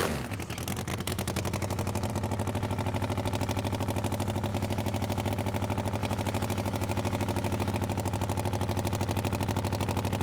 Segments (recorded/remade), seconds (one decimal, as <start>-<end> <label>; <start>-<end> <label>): 0.0-0.9 recorded; 0.9-2.1 remade; 2.1-4.5 recorded; 4.5-5.3 remade; 5.3-6.0 recorded; 6.0-7.7 remade; 7.7-10.2 recorded